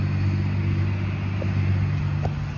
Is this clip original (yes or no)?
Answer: yes